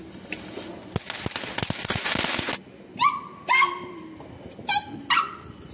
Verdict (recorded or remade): recorded